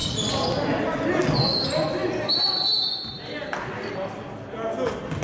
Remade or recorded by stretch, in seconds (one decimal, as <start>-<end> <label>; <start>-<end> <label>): 0.0-5.2 recorded